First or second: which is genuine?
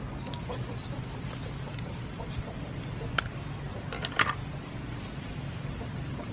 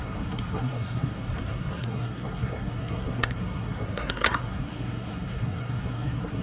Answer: first